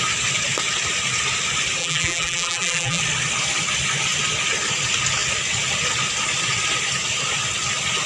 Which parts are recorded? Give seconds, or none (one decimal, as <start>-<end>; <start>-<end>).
0.0-1.8; 3.0-8.1